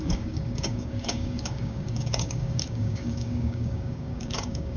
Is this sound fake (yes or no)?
yes